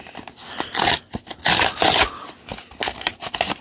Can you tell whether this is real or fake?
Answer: real